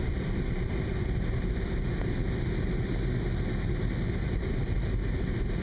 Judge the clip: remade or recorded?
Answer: recorded